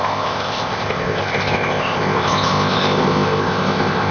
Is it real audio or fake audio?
fake